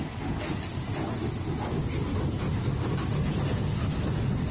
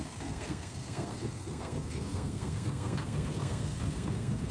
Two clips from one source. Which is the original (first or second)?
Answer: first